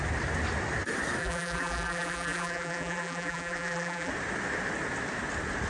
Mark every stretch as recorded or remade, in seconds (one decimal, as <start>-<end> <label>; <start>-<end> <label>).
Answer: 0.0-1.2 recorded; 1.2-4.1 remade; 4.1-5.7 recorded